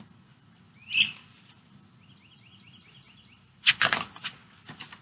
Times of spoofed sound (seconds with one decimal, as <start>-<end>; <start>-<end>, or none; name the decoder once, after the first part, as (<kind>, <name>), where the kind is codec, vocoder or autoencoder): none